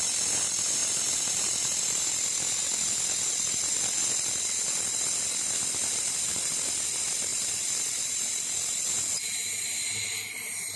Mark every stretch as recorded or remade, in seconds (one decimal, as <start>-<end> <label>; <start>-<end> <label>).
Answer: 0.0-0.8 recorded; 0.8-1.8 remade; 1.8-5.9 recorded; 5.9-6.5 remade; 6.5-7.3 recorded; 7.3-8.3 remade; 8.3-10.8 recorded

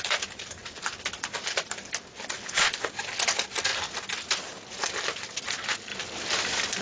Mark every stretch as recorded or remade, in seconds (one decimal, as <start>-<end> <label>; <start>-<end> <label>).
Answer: 0.0-0.6 remade; 0.6-2.1 recorded; 2.1-6.8 remade

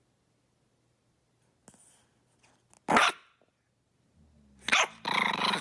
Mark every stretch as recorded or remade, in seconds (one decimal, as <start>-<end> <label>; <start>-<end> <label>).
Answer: 0.0-5.6 recorded

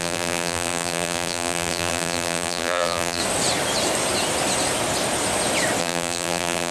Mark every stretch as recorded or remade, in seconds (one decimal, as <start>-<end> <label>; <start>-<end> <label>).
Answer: 0.0-3.2 remade; 3.2-5.8 recorded; 5.8-6.7 remade

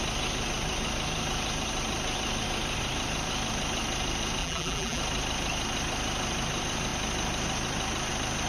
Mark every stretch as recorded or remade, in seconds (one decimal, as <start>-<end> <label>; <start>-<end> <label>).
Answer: 0.0-4.4 recorded; 4.4-5.0 remade; 5.0-8.5 recorded